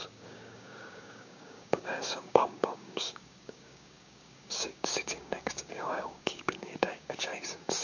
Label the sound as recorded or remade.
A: remade